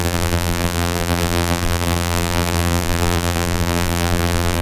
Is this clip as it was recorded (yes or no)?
no